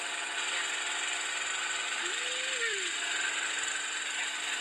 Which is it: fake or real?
real